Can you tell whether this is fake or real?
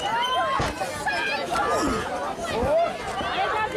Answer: real